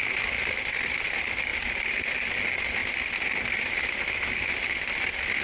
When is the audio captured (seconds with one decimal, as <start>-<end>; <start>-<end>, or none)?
0.0-5.4